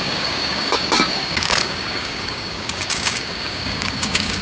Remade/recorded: remade